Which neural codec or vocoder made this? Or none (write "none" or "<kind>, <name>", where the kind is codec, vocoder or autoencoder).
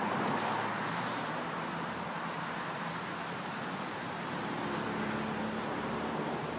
none